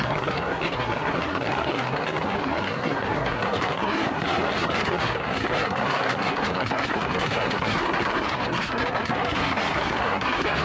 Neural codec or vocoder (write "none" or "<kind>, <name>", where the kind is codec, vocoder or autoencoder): codec, SNAC